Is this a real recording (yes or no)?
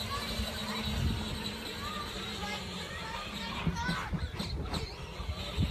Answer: yes